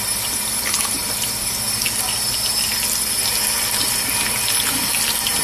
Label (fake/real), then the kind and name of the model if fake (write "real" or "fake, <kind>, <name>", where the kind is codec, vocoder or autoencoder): real